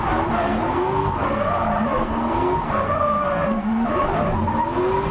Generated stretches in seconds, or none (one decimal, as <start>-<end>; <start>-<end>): 0.4-1.4; 2.0-3.7